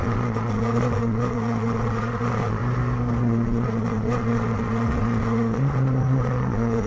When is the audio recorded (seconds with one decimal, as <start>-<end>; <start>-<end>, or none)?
2.6-3.2